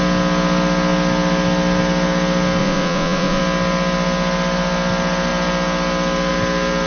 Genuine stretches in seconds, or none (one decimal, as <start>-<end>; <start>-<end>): 0.0-2.6; 3.4-6.9